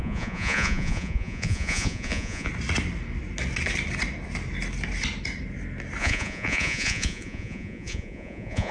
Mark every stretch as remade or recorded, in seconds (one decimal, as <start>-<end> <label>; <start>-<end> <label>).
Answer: 0.0-2.5 remade; 2.5-6.0 recorded; 6.0-8.7 remade